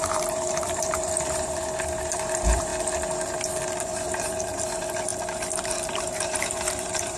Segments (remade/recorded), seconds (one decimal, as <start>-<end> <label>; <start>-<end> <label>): 0.0-2.7 remade; 2.7-3.8 recorded; 3.8-5.1 remade; 5.1-5.6 recorded; 5.6-7.2 remade